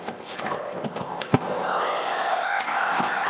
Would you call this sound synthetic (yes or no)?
yes